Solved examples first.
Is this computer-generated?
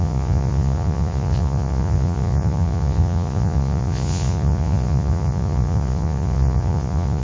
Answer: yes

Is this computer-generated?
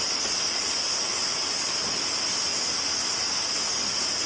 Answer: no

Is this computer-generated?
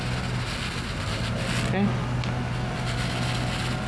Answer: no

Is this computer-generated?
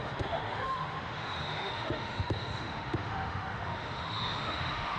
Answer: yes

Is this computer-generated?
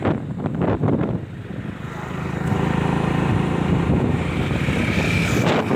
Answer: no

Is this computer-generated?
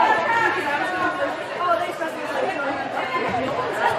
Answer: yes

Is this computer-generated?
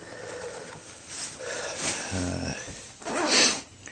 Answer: no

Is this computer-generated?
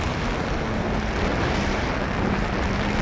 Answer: no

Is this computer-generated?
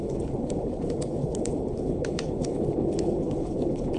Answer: yes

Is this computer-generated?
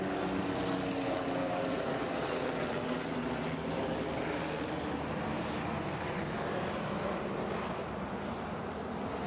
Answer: no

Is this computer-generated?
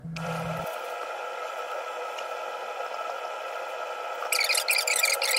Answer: no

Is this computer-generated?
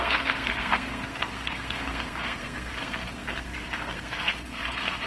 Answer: yes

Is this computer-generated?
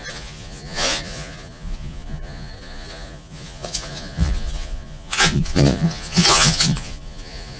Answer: yes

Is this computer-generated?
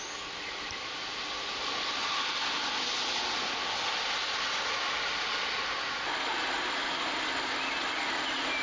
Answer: no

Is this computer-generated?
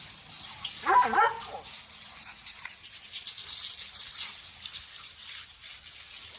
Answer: no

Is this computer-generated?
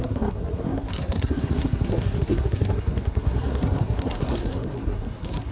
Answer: yes